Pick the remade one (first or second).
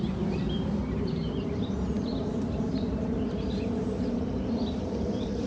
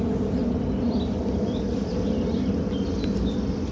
first